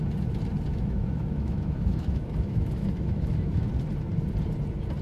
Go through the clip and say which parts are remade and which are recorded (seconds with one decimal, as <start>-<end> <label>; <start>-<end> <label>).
0.0-0.7 recorded; 0.7-3.7 remade; 3.7-5.0 recorded